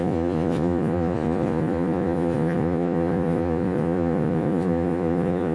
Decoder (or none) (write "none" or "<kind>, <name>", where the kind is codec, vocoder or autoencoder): vocoder, Vocos